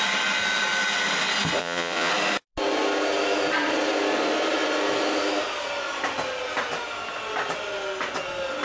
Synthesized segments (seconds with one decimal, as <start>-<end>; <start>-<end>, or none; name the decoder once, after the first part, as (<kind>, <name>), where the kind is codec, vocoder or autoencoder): 1.6-2.1 (vocoder, Vocos)